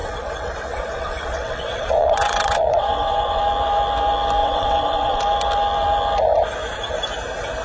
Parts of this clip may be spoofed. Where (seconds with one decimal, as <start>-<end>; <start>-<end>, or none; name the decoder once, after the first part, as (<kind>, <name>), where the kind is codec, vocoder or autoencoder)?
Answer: 0.0-3.4 (vocoder, WaveNeXt); 4.4-5.2